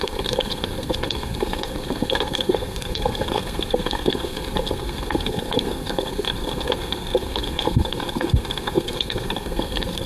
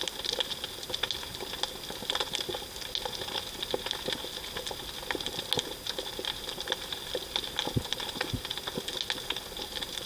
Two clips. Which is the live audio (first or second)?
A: second